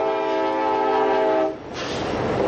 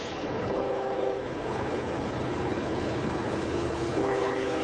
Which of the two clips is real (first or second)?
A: first